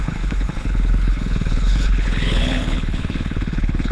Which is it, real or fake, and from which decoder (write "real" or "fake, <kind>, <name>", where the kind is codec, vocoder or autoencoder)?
fake, codec, HILCodec